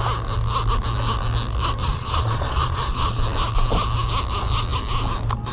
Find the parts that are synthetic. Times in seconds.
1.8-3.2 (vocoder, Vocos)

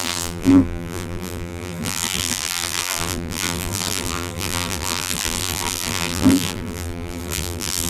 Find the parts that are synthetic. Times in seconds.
0.0-7.9 (vocoder, BigVGAN v2)

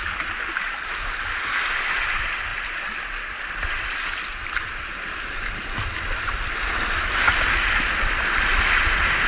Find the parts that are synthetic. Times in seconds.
none

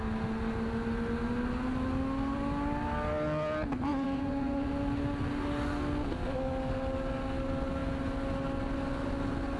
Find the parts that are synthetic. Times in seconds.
3.9-4.7 (vocoder, Vocos)

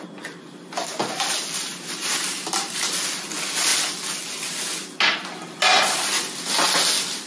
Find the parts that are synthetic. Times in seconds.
1.7-2.7 (vocoder, BigVGAN v2)

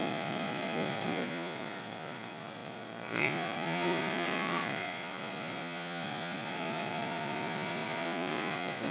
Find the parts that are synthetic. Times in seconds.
0.0-8.9 (vocoder, Vocos)

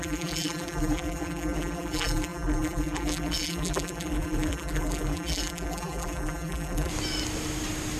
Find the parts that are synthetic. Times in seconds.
0.0-6.9 (vocoder, BigVGAN v2)